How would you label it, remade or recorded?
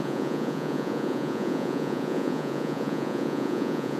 remade